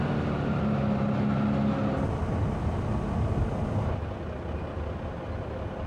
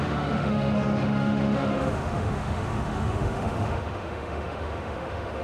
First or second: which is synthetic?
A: second